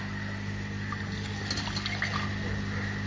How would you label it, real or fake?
real